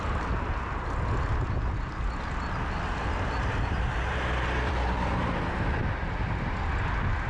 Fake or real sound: real